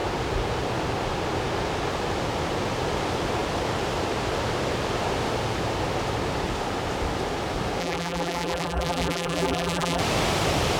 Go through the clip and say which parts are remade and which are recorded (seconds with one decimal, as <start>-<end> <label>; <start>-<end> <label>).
0.0-7.8 recorded; 7.8-10.0 remade; 10.0-10.8 recorded